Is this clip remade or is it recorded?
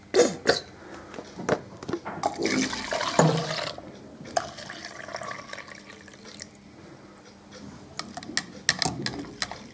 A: recorded